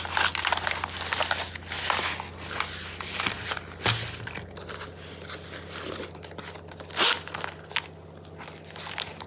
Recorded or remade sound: recorded